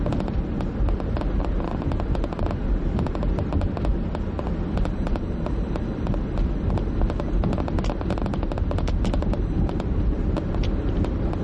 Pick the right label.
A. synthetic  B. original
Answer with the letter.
B